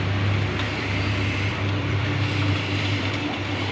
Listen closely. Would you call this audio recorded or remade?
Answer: remade